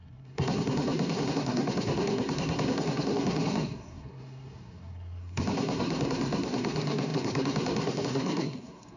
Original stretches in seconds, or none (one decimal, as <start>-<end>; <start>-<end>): none